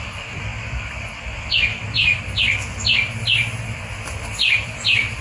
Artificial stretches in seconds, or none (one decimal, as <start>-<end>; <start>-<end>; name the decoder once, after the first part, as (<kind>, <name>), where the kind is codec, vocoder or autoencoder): 0.0-0.5 (vocoder, BigVGAN v2); 3.6-5.2